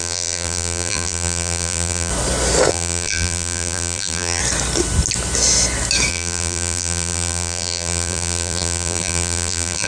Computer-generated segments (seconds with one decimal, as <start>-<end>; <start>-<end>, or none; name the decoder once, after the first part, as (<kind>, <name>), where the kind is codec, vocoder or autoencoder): 0.0-2.1 (vocoder, BigVGAN v2); 2.7-4.4; 6.1-9.9